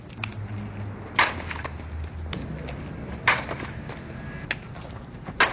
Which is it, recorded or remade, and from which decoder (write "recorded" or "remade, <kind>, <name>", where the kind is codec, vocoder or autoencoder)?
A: recorded